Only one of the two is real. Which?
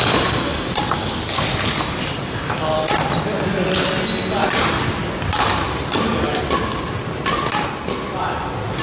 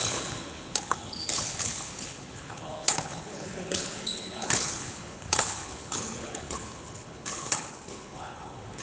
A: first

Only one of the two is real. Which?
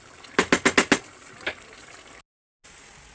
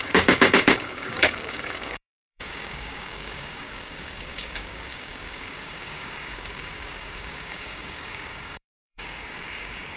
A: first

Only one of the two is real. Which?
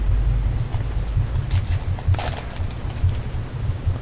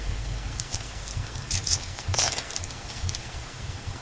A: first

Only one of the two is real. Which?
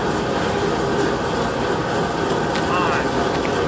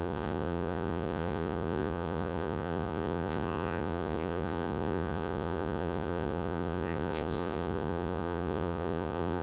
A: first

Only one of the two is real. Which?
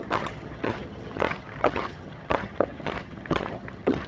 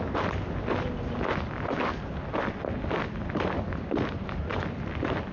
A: second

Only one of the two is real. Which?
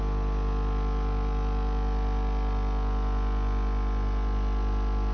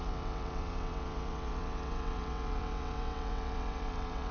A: first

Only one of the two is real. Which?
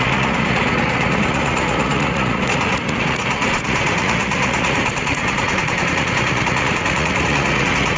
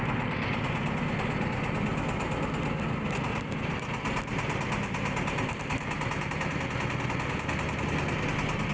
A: second